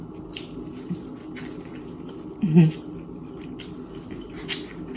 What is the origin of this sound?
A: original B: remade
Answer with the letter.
A